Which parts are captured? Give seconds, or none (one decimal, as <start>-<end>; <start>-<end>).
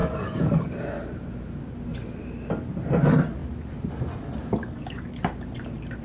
0.7-4.6; 5.2-6.0